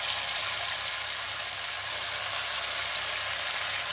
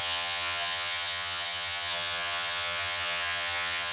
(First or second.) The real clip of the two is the first